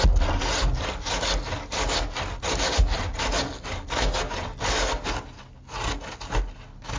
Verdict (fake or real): real